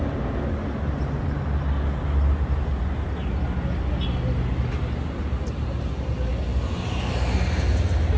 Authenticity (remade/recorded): recorded